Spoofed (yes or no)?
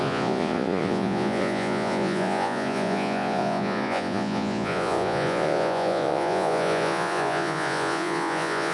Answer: yes